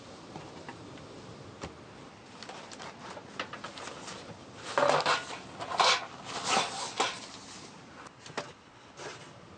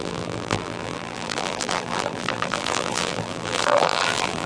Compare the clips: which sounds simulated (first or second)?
second